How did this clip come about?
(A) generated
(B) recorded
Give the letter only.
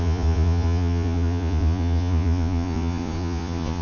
A